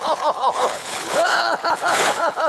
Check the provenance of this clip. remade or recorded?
remade